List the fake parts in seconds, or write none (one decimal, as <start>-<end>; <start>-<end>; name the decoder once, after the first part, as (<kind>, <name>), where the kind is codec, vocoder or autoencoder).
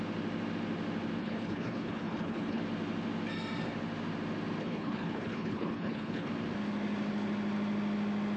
1.2-2.6 (codec, HILCodec); 4.6-6.3